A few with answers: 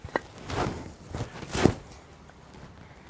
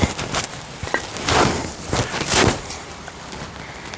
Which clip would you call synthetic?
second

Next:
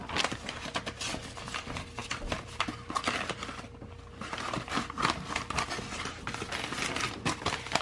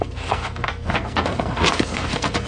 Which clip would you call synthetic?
second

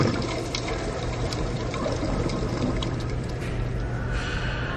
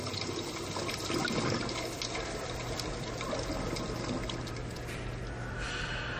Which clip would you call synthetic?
first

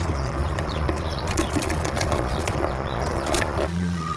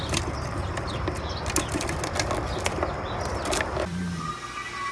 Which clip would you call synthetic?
first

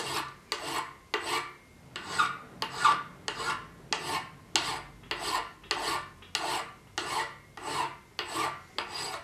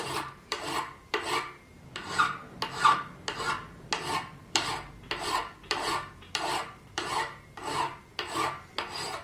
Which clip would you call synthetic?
second